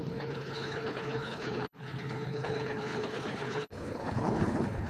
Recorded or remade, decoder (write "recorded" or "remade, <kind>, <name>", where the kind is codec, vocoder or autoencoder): remade, codec, HILCodec